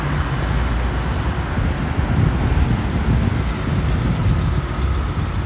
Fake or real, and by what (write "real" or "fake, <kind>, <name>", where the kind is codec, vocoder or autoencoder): real